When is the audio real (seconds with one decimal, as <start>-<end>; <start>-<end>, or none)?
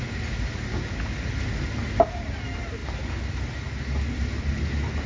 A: 0.0-5.1